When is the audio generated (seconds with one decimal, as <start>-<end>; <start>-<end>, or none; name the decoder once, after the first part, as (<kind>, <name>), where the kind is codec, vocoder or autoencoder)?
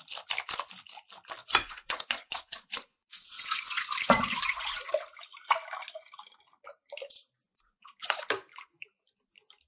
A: 1.4-4.9 (vocoder, Vocos); 7.4-8.3